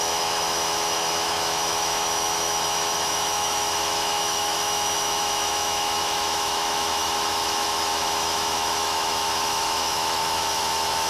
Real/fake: fake